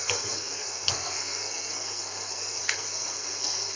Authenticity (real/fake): fake